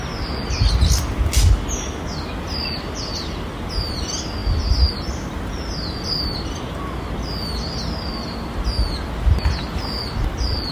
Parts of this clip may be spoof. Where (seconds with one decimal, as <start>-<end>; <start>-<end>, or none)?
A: none